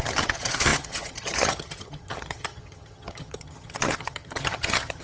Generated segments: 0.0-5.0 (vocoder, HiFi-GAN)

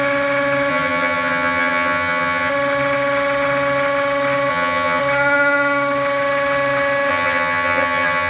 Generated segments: 0.7-2.5 (vocoder, HiFi-GAN); 4.5-5.0; 7.1-8.3

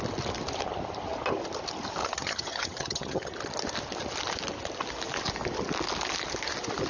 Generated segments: 2.0-3.4 (vocoder, HiFi-GAN)

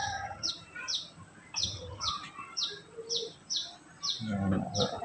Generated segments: 0.0-0.5 (vocoder, HiFi-GAN); 1.6-2.1

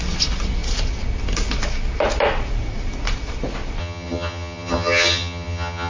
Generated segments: 3.8-5.9 (vocoder, HiFi-GAN)

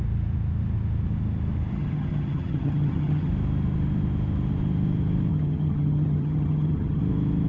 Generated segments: 1.7-3.3 (vocoder, HiFi-GAN); 5.3-7.0

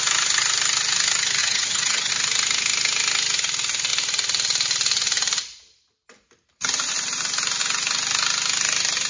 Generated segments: 1.4-2.1 (vocoder, HiFi-GAN)

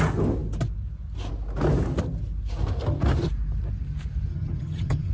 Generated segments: 4.3-5.1 (vocoder, HiFi-GAN)